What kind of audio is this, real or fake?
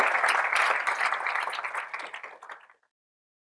real